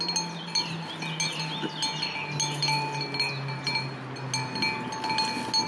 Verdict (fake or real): real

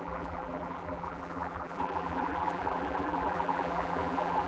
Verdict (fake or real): fake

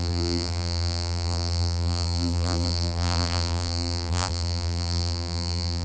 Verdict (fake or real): fake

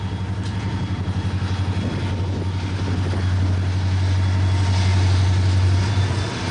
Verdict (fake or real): real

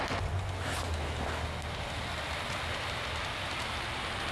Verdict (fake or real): real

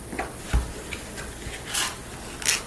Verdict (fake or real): real